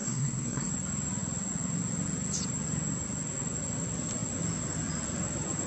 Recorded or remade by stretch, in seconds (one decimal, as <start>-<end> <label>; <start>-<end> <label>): 0.0-0.7 remade; 0.7-5.7 recorded